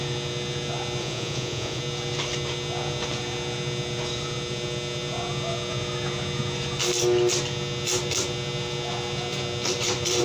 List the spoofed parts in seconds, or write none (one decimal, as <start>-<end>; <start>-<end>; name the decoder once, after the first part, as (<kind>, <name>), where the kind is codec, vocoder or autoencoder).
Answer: 1.0-1.8 (vocoder, Vocos)